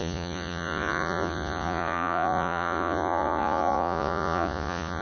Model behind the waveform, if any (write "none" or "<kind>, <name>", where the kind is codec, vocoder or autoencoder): vocoder, Vocos